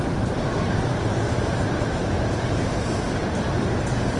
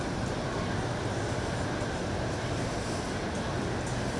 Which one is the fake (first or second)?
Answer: first